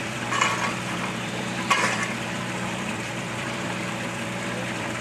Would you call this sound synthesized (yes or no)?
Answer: yes